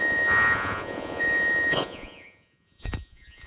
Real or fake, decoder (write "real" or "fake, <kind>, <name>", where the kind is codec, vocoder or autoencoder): fake, vocoder, Vocos